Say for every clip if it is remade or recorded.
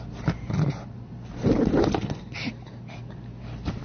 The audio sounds recorded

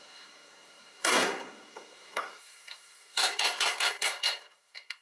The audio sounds remade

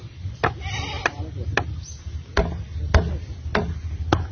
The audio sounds recorded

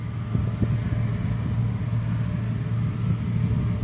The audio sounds recorded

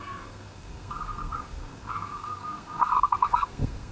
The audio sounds remade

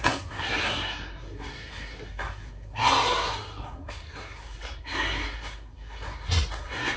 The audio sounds remade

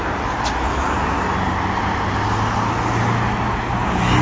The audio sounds recorded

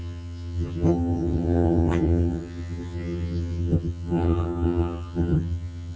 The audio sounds remade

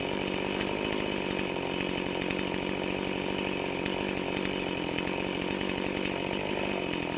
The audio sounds recorded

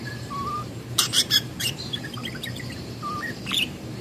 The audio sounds remade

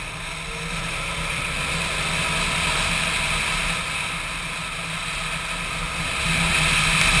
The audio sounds recorded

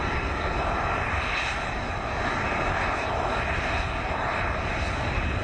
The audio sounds recorded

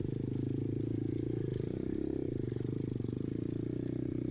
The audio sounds recorded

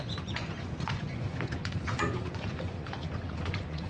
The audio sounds remade